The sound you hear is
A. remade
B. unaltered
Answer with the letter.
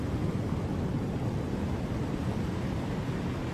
B